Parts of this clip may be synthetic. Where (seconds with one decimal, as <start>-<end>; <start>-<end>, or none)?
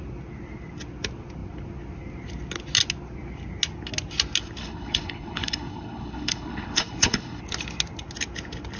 4.6-7.4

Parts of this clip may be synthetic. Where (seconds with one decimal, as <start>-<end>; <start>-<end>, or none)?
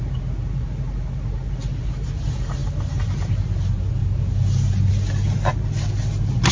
none